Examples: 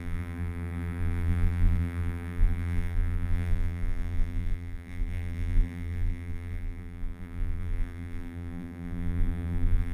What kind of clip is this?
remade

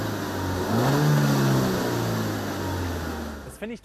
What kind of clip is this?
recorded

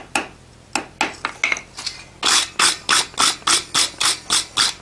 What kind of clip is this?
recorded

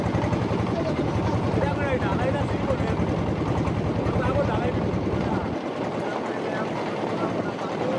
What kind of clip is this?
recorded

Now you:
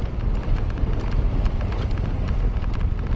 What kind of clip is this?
recorded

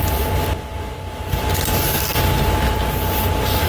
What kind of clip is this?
recorded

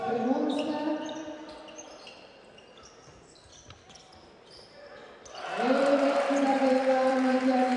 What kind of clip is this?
remade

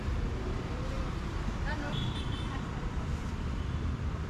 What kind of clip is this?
remade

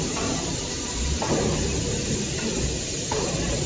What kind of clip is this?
recorded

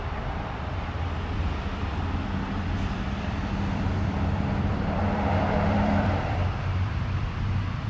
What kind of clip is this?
remade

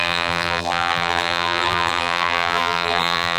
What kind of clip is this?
remade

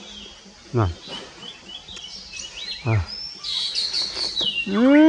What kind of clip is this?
recorded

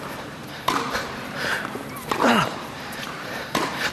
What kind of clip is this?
remade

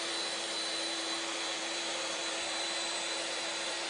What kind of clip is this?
remade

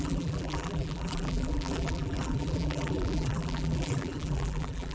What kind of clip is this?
remade